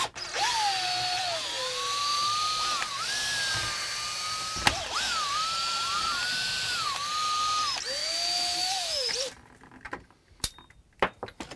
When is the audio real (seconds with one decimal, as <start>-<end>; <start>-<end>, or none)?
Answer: 0.0-8.0; 9.1-11.6